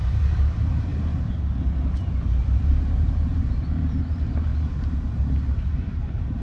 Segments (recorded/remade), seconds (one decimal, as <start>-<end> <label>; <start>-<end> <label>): 0.0-0.9 remade; 0.9-2.2 recorded; 2.2-4.5 remade; 4.5-5.7 recorded; 5.7-6.4 remade